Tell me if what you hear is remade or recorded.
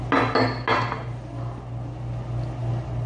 recorded